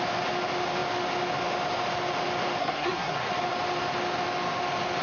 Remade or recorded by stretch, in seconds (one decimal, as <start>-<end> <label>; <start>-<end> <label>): 0.0-2.6 recorded; 2.6-3.3 remade; 3.3-5.0 recorded